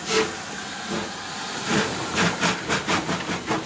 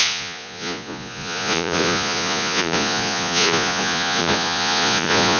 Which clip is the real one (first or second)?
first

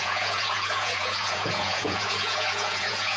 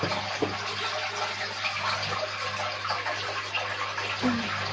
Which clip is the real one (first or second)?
second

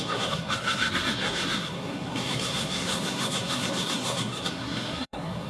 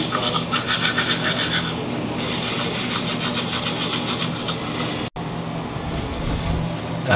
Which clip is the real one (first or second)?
second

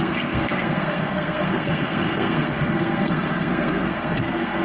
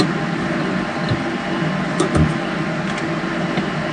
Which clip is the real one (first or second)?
second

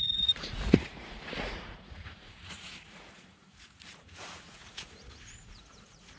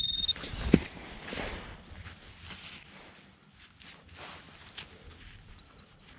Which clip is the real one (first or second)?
second